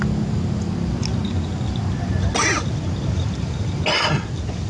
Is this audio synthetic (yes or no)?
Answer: no